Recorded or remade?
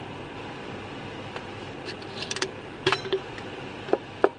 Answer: recorded